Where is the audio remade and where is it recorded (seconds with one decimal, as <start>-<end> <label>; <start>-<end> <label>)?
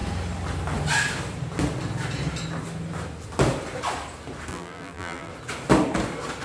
0.0-4.5 recorded; 4.5-5.3 remade; 5.3-6.4 recorded